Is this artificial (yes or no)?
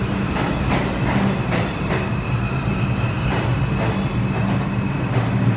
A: no